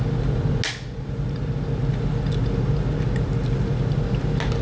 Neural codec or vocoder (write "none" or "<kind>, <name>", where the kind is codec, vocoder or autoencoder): none